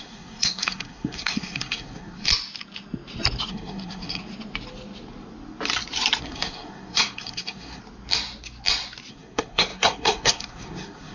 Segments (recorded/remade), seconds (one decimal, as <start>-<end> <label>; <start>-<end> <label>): 0.0-2.3 remade; 2.3-3.5 recorded; 3.5-4.2 remade; 4.2-6.2 recorded; 6.2-7.8 remade; 7.8-9.1 recorded; 9.1-11.1 remade